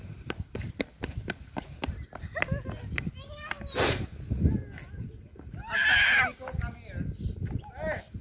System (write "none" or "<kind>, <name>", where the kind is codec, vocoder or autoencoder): none